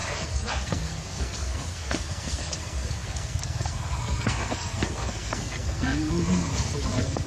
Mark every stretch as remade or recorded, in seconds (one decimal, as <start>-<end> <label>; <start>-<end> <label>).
0.0-7.3 remade

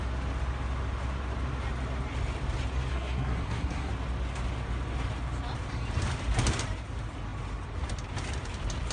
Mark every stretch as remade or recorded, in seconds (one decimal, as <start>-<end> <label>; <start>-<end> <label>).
0.0-2.9 recorded; 2.9-3.9 remade; 3.9-8.9 recorded

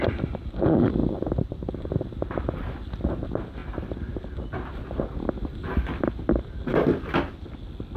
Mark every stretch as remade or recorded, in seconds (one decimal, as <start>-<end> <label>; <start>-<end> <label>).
0.0-8.0 recorded

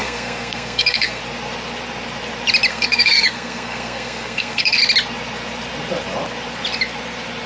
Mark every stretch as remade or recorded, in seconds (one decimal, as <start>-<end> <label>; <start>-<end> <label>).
0.0-1.2 remade; 1.2-2.7 recorded; 2.7-4.8 remade; 4.8-7.5 recorded

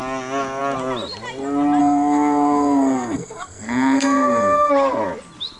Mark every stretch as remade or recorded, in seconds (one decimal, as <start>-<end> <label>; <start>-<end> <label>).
0.0-1.8 recorded; 1.8-4.7 remade; 4.7-5.6 recorded

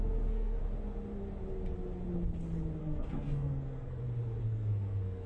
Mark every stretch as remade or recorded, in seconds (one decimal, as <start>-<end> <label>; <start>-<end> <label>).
0.0-0.6 remade; 0.6-2.8 recorded; 2.8-4.0 remade; 4.0-4.4 recorded; 4.4-5.3 remade

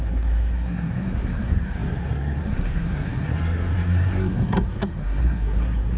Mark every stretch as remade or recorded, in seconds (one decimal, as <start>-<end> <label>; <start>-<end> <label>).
0.0-6.0 remade

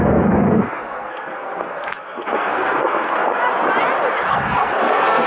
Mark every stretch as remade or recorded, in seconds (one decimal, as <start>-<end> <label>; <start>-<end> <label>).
0.0-3.4 remade; 3.4-4.3 recorded; 4.3-5.3 remade